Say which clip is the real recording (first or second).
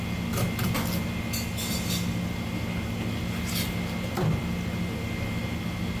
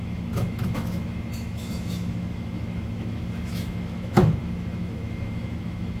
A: first